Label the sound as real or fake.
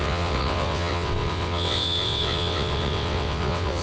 fake